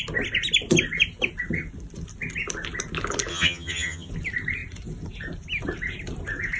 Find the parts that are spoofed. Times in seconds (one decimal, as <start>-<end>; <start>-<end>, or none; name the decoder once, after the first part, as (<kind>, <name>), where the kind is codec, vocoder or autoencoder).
3.3-4.1 (vocoder, HiFi-GAN)